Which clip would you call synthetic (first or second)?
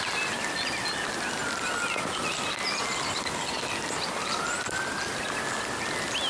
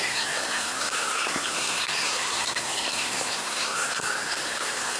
second